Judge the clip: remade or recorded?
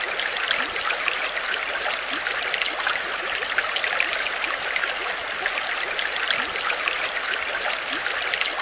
recorded